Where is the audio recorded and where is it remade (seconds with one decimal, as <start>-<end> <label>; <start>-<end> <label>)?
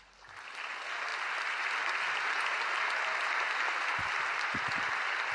0.0-5.3 recorded